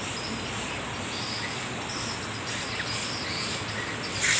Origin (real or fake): real